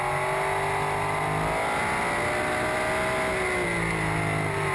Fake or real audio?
real